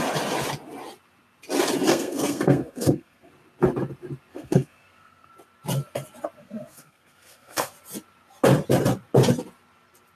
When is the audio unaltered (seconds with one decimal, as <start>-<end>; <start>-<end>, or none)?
0.0-1.9; 3.3-4.3; 5.3-6.4; 7.7-10.2